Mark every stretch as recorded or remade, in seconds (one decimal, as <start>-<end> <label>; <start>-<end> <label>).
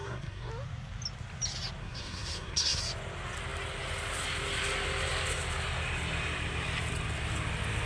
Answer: 0.0-0.5 remade; 0.5-1.8 recorded; 1.8-2.8 remade; 2.8-7.9 recorded